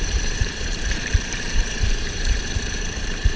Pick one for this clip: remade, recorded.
remade